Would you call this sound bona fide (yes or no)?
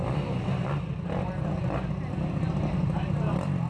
yes